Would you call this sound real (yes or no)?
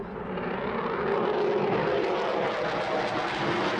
yes